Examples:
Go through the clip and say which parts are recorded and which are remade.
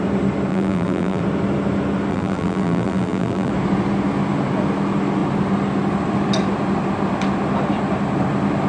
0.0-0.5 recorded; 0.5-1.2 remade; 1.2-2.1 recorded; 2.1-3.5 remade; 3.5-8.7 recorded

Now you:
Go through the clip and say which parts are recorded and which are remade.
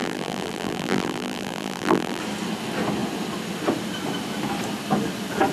0.0-2.2 remade; 2.2-5.5 recorded